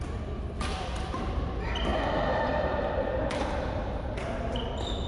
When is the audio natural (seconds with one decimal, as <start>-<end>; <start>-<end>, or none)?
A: 0.0-5.1